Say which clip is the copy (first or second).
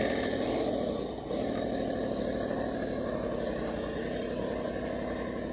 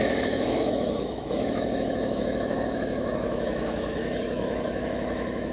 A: second